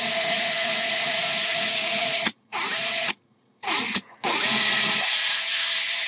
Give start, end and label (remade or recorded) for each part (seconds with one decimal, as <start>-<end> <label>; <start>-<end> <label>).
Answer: 0.0-6.1 remade